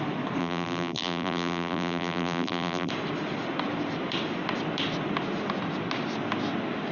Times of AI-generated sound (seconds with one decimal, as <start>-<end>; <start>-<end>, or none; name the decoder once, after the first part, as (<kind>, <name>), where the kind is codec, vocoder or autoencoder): 0.4-2.9 (vocoder, BigVGAN v2)